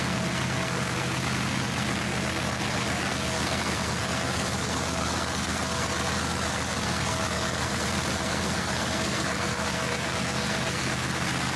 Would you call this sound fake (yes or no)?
yes